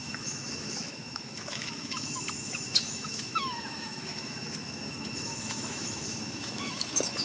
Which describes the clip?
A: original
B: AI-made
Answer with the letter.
B